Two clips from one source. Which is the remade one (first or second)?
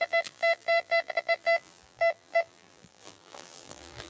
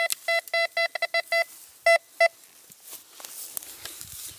first